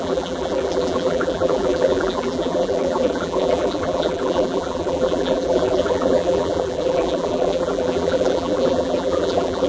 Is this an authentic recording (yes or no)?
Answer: no